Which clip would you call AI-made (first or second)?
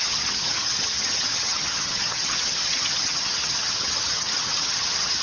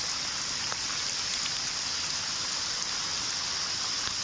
first